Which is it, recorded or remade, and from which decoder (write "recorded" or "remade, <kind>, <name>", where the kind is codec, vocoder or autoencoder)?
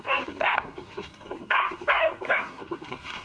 remade, codec, SNAC